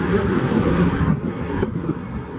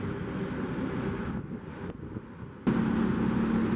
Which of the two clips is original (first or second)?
second